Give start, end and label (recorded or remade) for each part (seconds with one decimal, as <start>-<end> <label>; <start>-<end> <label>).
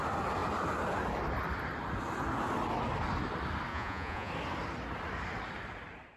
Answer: 0.0-3.7 recorded; 3.7-4.3 remade; 4.3-6.2 recorded